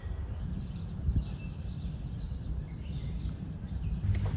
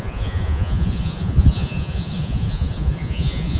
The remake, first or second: second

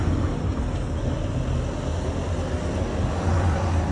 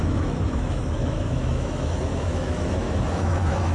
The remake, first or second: second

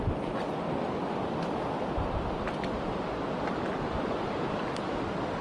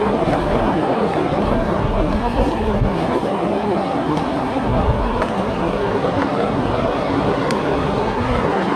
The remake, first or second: second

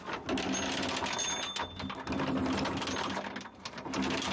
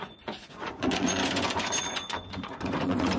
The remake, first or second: second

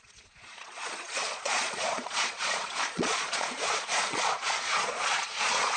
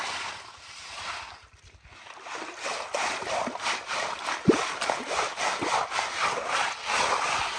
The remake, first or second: first